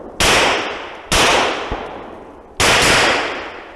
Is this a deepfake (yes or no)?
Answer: no